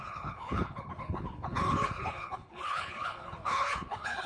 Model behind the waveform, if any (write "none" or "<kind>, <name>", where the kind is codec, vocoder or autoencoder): codec, HILCodec